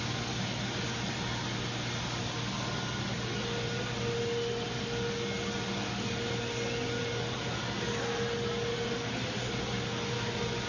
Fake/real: real